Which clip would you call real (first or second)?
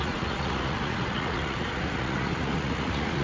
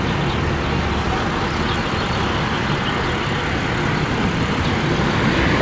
second